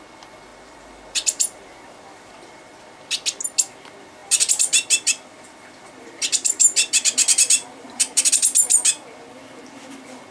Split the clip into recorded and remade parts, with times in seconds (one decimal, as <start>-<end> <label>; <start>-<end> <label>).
0.0-0.5 recorded; 0.5-2.9 remade; 2.9-4.2 recorded; 4.2-8.3 remade; 8.3-10.3 recorded